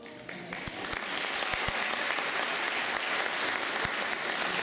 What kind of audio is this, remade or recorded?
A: recorded